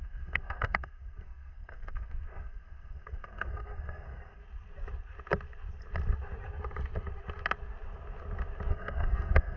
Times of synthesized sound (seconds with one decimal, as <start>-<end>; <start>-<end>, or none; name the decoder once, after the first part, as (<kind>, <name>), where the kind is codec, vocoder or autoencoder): 0.0-4.4 (codec, SNAC); 8.7-9.6